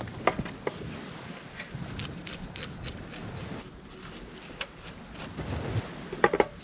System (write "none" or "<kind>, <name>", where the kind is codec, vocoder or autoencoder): none